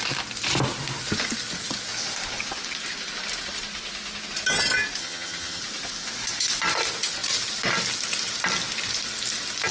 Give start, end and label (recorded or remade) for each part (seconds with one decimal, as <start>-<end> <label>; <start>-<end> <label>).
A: 0.0-5.0 recorded; 5.0-5.6 remade; 5.6-9.7 recorded